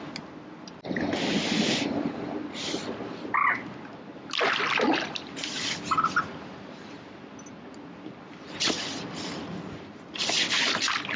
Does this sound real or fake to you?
real